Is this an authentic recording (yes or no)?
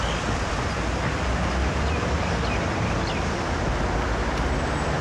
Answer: yes